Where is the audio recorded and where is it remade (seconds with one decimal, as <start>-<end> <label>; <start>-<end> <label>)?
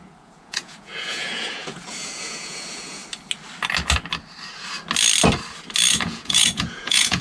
0.0-3.0 remade; 3.0-5.9 recorded; 5.9-7.2 remade